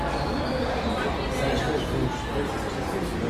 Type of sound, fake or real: real